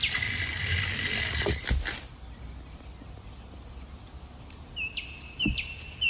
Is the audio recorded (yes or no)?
yes